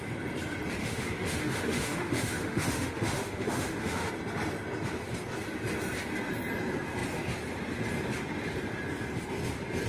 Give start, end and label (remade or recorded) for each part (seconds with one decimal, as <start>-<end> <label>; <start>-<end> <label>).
0.0-0.8 recorded; 0.8-4.1 remade; 4.1-9.9 recorded